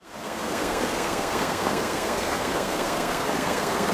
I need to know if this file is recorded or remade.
remade